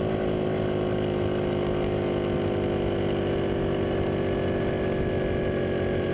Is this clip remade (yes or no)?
no